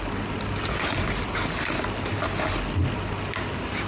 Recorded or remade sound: recorded